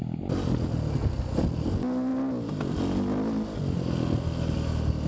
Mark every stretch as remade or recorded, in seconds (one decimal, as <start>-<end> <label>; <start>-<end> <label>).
0.0-5.1 recorded